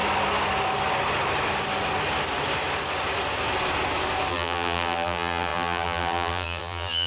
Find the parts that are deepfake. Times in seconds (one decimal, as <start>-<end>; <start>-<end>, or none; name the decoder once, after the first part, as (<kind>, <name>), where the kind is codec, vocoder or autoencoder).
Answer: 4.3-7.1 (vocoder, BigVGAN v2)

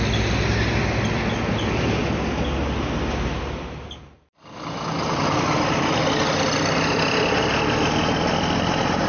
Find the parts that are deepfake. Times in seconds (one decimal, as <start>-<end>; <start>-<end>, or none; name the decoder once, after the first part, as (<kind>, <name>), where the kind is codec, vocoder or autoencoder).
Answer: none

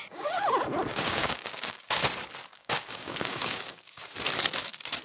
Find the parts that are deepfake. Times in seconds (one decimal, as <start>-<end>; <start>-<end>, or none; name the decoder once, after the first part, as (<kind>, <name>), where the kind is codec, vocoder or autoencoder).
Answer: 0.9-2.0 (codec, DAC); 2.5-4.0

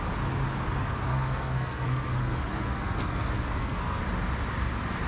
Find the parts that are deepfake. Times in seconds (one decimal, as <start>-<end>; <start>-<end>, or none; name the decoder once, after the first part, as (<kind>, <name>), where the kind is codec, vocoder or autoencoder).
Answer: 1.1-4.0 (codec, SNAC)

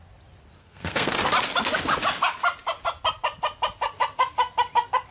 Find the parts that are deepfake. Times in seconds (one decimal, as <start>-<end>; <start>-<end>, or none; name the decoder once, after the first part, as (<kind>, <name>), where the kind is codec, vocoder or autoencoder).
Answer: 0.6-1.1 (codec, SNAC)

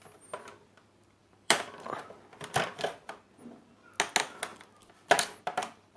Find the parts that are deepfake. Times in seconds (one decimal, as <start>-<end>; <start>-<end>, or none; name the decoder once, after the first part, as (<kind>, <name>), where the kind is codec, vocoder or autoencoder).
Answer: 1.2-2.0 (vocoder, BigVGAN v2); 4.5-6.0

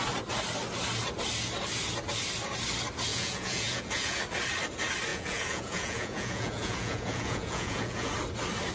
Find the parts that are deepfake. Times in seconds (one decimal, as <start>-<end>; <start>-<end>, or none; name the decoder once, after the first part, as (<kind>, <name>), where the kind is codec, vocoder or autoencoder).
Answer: 3.1-4.2 (vocoder, Vocos); 5.1-8.1